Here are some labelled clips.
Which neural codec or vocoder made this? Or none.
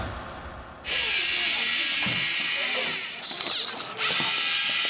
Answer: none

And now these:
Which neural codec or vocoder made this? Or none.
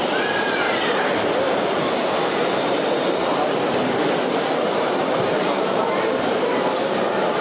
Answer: vocoder, BigVGAN v2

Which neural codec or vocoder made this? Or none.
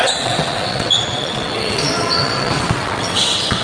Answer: vocoder, WaveNeXt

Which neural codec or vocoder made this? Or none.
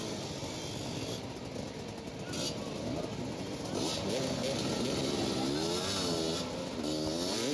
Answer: none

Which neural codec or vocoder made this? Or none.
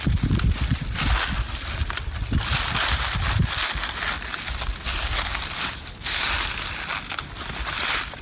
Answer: none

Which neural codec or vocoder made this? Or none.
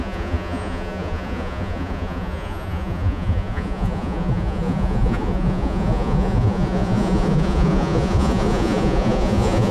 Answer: vocoder, Vocos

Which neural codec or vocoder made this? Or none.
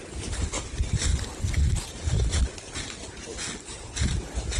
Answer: none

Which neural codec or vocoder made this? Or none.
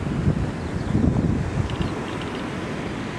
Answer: none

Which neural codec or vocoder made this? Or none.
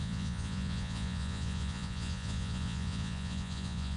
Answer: vocoder, Vocos